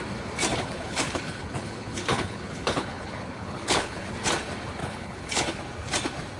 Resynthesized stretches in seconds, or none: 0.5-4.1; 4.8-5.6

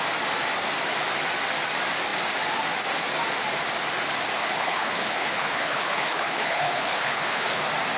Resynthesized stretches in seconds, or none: 4.4-7.6

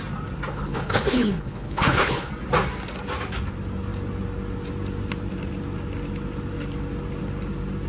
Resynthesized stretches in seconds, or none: 0.5-2.3

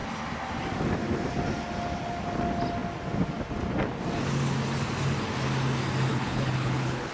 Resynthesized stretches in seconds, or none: 6.1-7.1

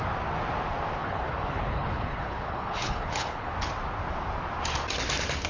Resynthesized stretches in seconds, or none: 1.0-3.5

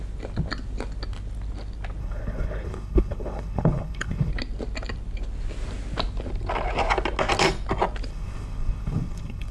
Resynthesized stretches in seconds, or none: 2.0-4.3; 8.1-9.5

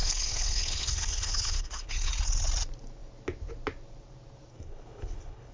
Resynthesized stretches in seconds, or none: 0.0-2.1; 4.5-5.5